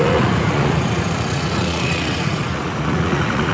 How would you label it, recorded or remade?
remade